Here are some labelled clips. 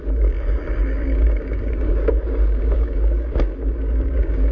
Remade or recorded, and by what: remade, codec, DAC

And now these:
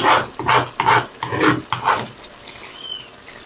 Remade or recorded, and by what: recorded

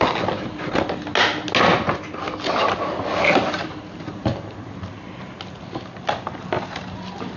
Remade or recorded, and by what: recorded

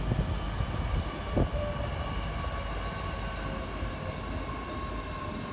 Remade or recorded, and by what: recorded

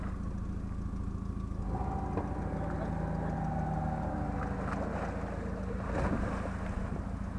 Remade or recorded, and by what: recorded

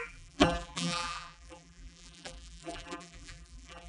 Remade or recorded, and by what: remade, vocoder, BigVGAN v2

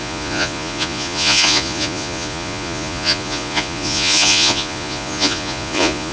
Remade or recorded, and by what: remade, vocoder, Vocos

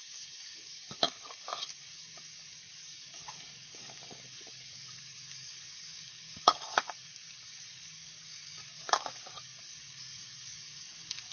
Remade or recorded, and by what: remade, codec, DAC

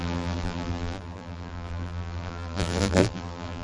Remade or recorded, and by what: remade, vocoder, BigVGAN v2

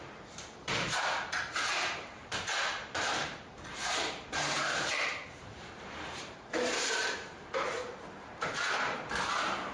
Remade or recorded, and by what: remade, vocoder, BigVGAN v2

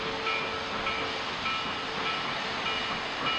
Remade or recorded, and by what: recorded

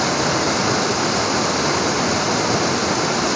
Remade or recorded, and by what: recorded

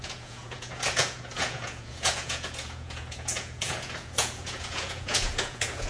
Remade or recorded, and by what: remade, vocoder, Vocos